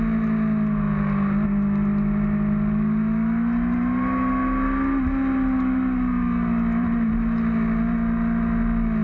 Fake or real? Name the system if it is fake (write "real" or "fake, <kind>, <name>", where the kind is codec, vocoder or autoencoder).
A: real